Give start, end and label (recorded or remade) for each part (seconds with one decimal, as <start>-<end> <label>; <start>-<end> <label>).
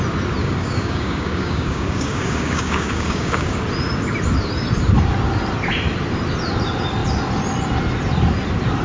0.0-0.4 recorded; 0.4-3.6 remade; 3.6-8.8 recorded